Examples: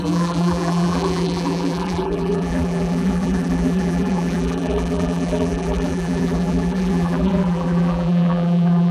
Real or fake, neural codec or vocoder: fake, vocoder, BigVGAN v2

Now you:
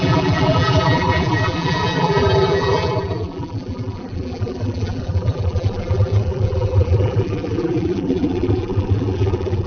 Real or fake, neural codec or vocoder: fake, vocoder, BigVGAN v2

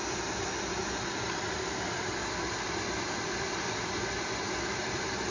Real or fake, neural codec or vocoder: fake, vocoder, BigVGAN v2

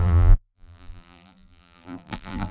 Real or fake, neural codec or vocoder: fake, vocoder, BigVGAN v2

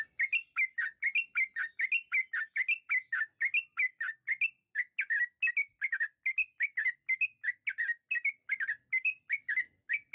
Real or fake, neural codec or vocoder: real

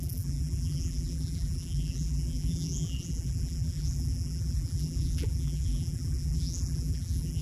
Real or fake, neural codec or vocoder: fake, vocoder, BigVGAN v2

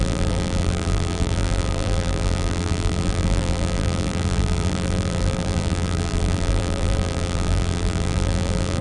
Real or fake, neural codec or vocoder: fake, vocoder, BigVGAN v2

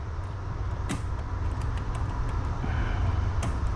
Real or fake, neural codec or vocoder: fake, vocoder, BigVGAN v2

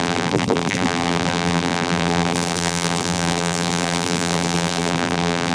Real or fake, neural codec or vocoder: fake, vocoder, BigVGAN v2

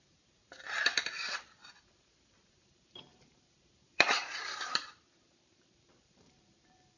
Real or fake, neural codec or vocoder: fake, vocoder, BigVGAN v2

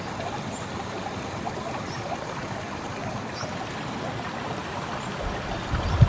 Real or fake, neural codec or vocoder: real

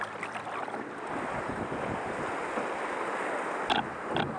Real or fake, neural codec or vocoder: real